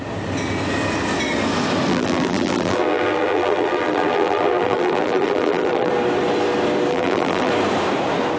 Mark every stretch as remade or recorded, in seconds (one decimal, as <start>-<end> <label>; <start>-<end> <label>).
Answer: 0.0-1.9 recorded; 1.9-5.9 remade; 5.9-6.9 recorded; 6.9-7.5 remade; 7.5-8.4 recorded